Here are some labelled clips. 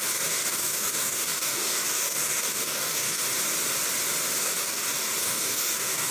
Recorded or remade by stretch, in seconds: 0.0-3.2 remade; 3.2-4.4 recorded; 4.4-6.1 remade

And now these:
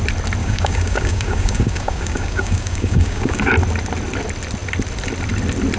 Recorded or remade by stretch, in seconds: 0.0-0.4 recorded; 0.4-3.5 remade; 3.5-5.8 recorded